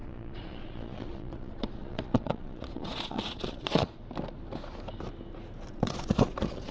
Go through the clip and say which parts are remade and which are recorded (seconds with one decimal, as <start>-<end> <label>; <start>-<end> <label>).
0.0-4.0 remade; 4.0-5.7 recorded; 5.7-6.7 remade